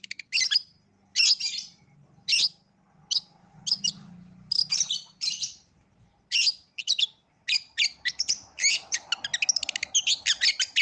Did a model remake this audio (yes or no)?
no